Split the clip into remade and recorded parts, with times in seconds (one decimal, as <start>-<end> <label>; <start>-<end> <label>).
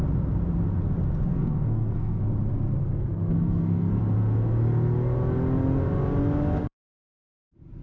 0.0-1.3 recorded; 1.3-2.2 remade; 2.2-2.8 recorded; 2.8-4.0 remade; 4.0-6.6 recorded; 6.6-7.1 remade; 7.1-7.8 recorded